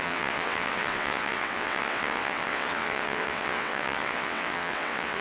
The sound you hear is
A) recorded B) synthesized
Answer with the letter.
B